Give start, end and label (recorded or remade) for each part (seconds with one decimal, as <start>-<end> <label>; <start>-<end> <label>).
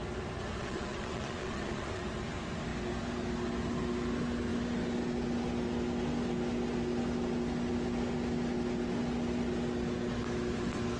0.0-0.6 recorded; 0.6-2.0 remade; 2.0-11.0 recorded